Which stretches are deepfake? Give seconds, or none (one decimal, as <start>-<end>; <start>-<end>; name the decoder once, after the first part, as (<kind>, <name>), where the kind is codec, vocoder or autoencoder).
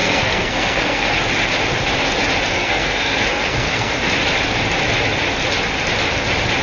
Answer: 0.0-1.1 (codec, SNAC); 2.5-3.9